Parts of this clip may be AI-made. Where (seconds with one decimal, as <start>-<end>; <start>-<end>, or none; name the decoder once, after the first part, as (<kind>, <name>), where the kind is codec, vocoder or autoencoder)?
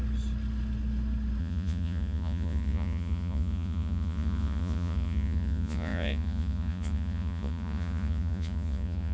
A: 1.4-9.1 (vocoder, Vocos)